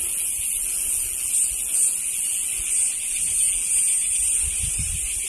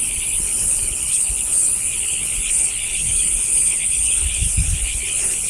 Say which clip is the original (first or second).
first